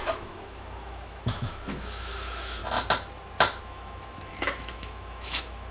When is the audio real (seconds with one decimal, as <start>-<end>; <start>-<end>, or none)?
2.6-3.6